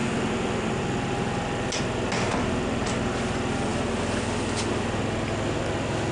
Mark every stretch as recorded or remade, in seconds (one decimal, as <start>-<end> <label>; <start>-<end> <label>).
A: 0.0-0.8 remade; 0.8-2.3 recorded; 2.3-3.1 remade; 3.1-6.1 recorded